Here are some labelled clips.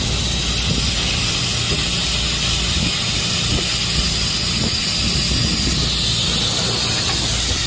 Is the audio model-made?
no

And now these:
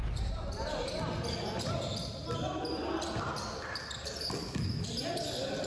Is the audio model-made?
no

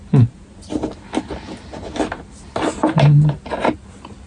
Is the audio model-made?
no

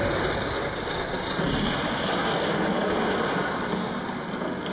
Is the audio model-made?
no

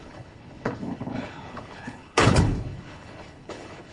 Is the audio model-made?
yes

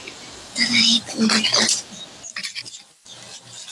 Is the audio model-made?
no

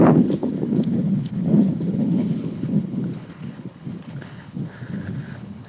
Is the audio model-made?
yes